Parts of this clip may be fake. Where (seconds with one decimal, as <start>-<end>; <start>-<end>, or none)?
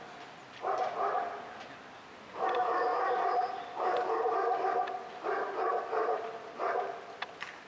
none